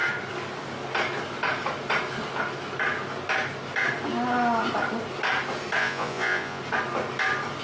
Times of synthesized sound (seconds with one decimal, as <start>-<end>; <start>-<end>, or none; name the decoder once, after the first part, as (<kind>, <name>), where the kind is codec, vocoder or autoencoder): 5.8-6.6 (vocoder, Vocos)